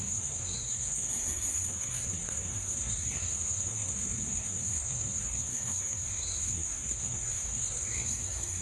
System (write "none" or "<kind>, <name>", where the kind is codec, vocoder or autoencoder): codec, SNAC